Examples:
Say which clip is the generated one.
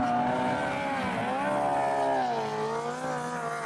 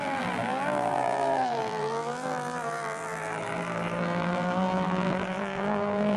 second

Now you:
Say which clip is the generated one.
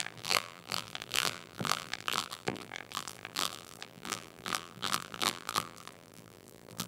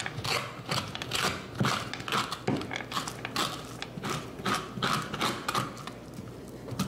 first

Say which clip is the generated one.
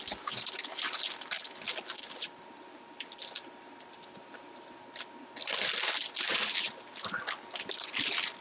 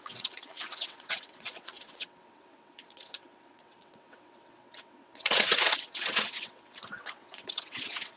second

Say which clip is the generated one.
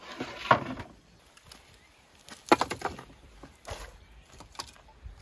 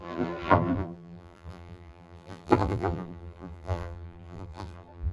second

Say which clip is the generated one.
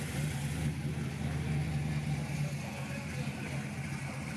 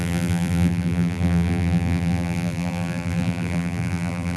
second